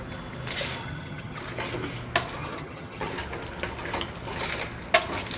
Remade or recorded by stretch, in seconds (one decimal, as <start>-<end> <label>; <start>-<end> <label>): 0.0-0.8 recorded; 0.8-1.4 remade; 1.4-2.4 recorded; 2.4-3.1 remade; 3.1-5.4 recorded